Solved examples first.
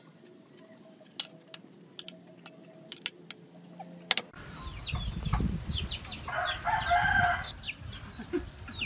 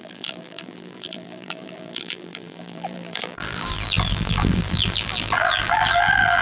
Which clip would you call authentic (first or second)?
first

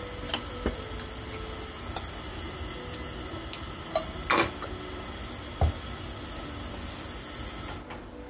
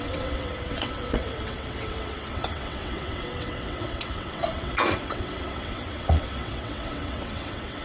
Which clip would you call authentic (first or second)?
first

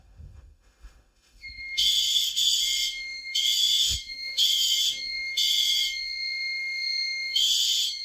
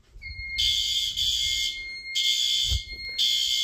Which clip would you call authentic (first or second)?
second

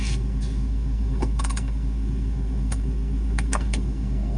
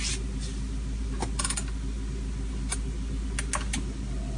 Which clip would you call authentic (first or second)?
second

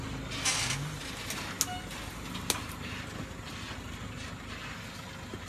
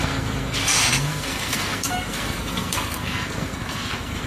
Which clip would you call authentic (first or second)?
first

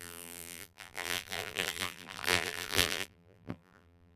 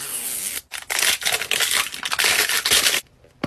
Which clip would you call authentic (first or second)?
second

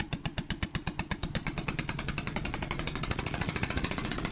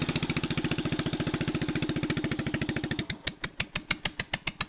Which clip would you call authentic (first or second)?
second